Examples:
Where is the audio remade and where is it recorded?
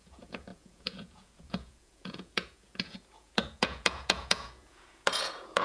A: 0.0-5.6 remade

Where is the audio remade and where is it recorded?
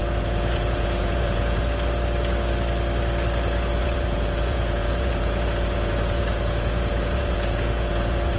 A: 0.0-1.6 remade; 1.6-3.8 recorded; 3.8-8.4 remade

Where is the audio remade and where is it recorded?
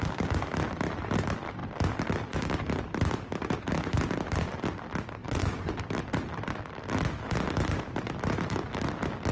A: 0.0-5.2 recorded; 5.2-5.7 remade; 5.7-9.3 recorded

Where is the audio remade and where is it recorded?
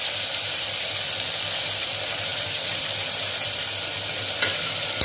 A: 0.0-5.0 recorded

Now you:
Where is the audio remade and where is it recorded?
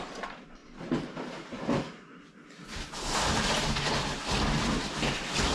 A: 0.0-5.5 recorded